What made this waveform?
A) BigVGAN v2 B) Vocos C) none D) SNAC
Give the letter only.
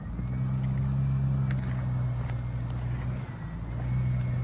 C